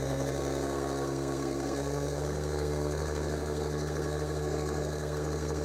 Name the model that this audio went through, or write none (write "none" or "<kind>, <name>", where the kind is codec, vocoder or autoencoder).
codec, SNAC